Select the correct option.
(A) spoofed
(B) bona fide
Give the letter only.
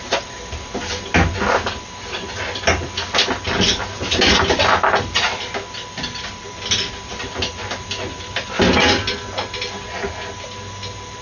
B